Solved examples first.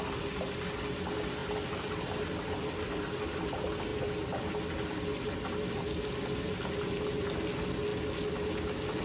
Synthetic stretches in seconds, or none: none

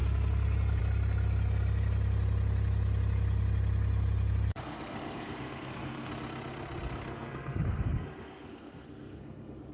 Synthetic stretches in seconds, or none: 4.5-6.1 (codec, SNAC); 7.1-9.7

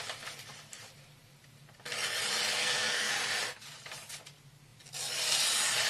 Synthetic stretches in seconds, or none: 2.6-3.1 (codec, SNAC)

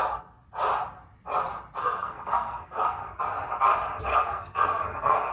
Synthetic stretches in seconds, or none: 1.8-3.2 (codec, SNAC); 4.1-5.3